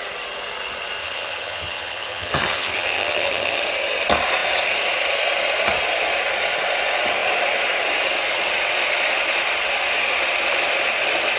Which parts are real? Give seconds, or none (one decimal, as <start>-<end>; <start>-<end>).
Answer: 0.0-1.0; 3.6-11.4

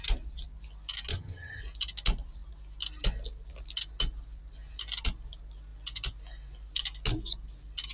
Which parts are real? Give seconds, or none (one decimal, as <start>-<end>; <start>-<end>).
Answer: 0.0-1.1; 1.6-7.9

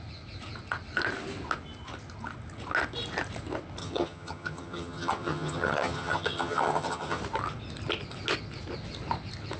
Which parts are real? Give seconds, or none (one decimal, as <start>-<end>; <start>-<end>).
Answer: 0.0-3.8; 7.2-9.6

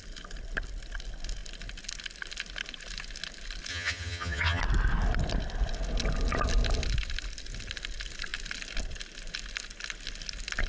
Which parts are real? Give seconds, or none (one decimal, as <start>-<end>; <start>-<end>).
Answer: 0.0-3.7; 4.6-10.7